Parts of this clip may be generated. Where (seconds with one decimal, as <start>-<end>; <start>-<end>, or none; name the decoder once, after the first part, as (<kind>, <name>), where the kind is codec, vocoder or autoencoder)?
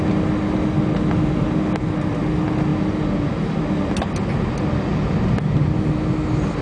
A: none